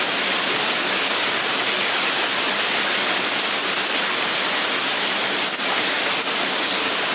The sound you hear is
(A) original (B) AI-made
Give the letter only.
A